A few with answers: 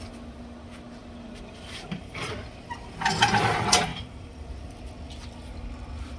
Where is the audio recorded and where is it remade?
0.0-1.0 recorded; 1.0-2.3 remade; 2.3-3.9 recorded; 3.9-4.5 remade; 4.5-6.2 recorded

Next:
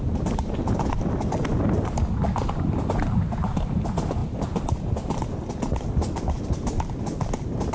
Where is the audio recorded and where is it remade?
0.0-7.7 recorded

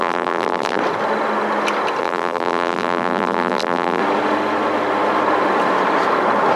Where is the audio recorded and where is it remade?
0.0-0.8 remade; 0.8-2.0 recorded; 2.0-4.0 remade; 4.0-6.6 recorded